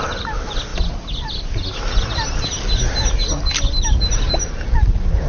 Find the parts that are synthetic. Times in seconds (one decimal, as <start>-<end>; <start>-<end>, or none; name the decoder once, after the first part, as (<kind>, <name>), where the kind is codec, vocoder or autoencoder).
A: none